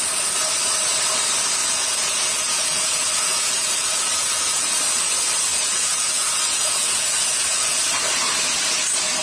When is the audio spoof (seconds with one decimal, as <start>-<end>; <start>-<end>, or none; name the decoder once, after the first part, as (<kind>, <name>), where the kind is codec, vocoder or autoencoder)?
1.6-4.8 (vocoder, Vocos); 5.5-7.8